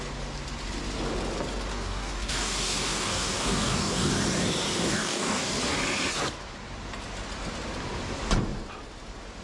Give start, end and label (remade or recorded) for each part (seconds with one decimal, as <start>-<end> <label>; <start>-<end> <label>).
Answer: 0.0-1.7 recorded; 1.7-4.1 remade; 4.1-4.7 recorded; 4.7-5.5 remade; 5.5-9.4 recorded